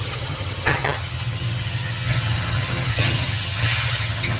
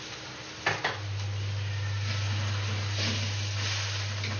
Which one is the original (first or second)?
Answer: second